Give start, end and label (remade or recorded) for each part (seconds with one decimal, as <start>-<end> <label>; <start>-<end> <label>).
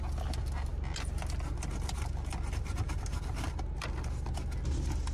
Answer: 0.0-5.1 recorded